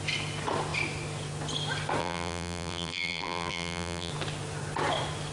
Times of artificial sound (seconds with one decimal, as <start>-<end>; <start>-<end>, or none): 2.0-4.1